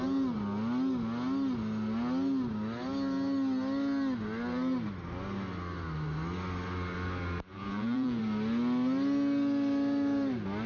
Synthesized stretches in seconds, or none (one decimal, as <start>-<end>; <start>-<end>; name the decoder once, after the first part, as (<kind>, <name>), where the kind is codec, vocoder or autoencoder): 7.5-8.2 (vocoder, Vocos)